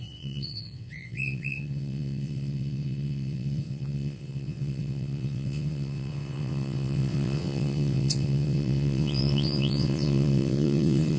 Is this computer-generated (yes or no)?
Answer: yes